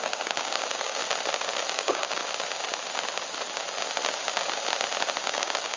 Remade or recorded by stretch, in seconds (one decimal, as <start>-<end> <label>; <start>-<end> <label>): 0.0-1.0 remade; 1.0-1.7 recorded; 1.7-2.2 remade; 2.2-5.2 recorded; 5.2-5.8 remade